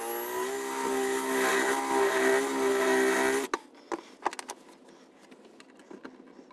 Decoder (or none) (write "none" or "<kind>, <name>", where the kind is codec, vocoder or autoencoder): none